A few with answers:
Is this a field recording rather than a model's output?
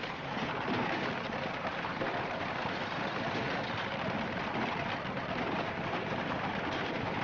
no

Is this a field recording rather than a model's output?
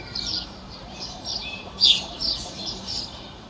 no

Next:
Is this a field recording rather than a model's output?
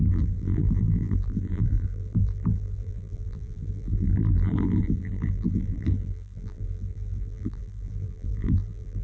no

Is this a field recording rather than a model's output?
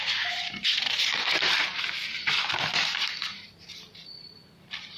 no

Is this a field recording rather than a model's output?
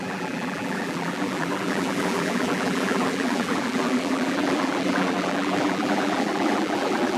no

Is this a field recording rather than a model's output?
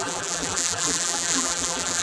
no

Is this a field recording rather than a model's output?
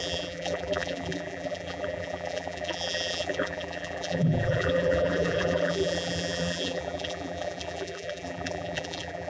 no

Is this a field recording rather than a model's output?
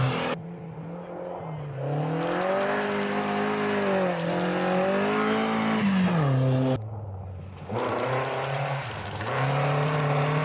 yes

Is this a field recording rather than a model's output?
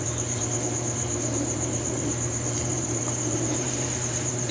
no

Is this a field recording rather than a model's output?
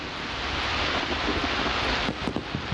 yes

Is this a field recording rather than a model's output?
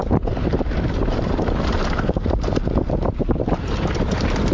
no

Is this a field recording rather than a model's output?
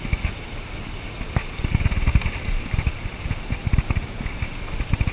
yes